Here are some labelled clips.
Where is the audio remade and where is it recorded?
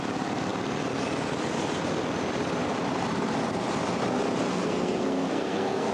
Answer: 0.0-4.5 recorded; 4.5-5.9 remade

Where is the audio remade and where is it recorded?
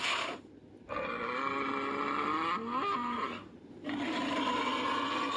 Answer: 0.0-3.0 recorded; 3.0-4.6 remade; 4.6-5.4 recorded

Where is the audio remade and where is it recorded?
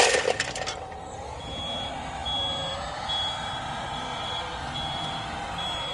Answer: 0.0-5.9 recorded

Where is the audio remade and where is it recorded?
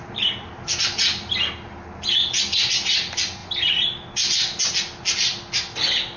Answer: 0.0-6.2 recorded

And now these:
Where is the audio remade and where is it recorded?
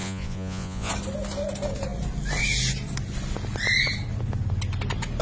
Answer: 0.0-0.9 remade; 0.9-5.2 recorded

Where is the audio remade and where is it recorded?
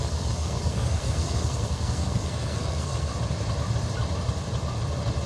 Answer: 0.0-3.1 remade; 3.1-5.3 recorded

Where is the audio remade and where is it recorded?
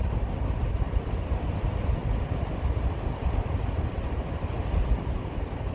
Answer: 0.0-5.7 recorded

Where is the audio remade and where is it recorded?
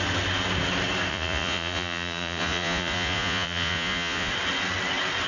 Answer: 0.0-1.1 recorded; 1.1-4.3 remade; 4.3-5.3 recorded